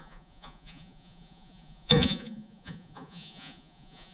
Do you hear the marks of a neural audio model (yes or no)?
yes